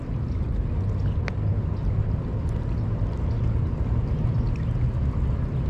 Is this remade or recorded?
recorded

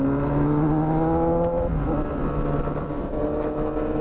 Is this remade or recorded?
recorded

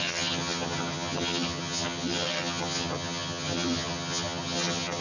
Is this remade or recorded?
remade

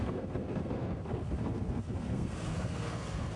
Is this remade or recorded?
remade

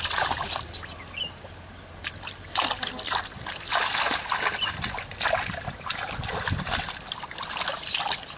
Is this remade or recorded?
recorded